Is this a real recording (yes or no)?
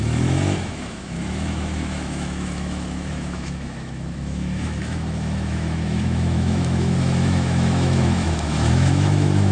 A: no